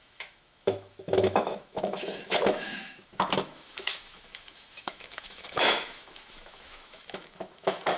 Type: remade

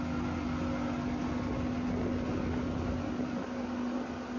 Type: recorded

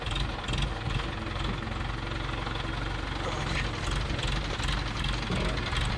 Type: recorded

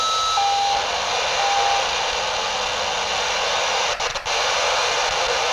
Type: recorded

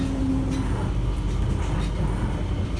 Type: recorded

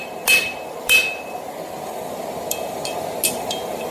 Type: recorded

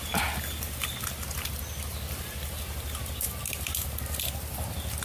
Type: recorded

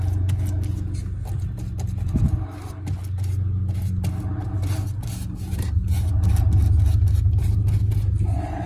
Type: recorded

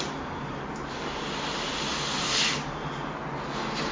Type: recorded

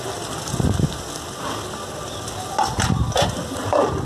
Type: recorded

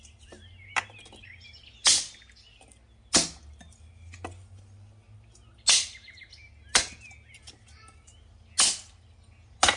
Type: recorded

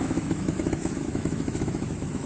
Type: remade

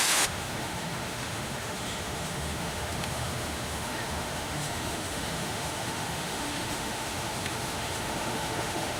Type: remade